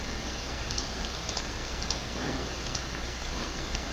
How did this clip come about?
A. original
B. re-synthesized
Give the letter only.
B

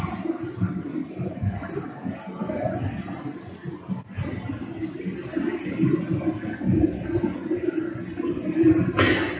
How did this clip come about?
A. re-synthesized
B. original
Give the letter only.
B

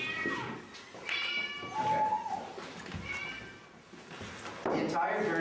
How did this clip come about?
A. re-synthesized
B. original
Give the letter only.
B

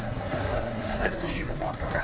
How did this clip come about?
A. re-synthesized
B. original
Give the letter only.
A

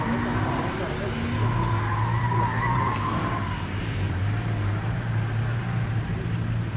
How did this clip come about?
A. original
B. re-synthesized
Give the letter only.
A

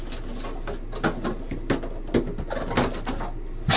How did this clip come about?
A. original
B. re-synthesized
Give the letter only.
A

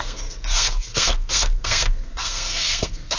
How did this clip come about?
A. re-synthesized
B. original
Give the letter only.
A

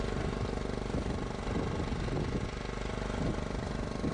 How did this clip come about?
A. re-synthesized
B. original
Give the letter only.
B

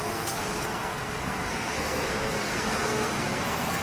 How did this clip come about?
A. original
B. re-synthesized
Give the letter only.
B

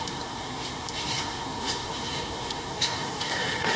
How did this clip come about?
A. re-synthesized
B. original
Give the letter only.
A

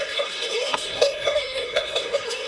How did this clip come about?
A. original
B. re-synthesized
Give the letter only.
B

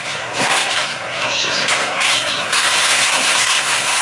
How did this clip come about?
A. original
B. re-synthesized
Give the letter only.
B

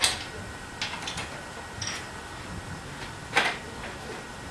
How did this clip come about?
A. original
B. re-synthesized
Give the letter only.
A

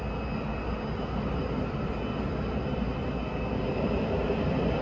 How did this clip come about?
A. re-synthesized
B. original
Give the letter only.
B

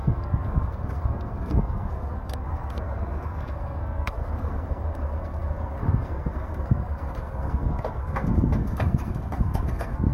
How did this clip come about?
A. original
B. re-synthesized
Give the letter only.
B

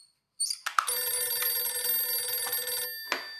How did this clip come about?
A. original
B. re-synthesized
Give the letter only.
A